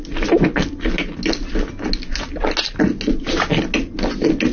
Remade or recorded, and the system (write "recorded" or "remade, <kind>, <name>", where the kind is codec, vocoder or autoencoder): recorded